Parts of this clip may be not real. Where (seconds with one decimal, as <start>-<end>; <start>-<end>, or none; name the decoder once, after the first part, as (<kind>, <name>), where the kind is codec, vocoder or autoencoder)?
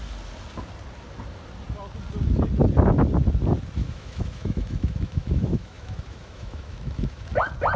3.8-7.3 (autoencoder, DAC-VAE)